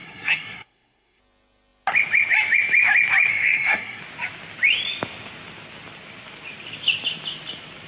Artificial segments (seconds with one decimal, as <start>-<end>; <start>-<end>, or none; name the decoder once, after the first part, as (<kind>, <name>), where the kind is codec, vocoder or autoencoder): 0.0-1.2 (codec, SNAC); 3.3-4.0